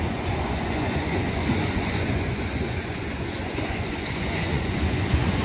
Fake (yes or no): yes